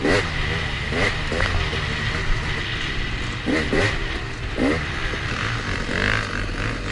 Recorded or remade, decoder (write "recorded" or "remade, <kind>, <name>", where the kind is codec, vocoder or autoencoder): recorded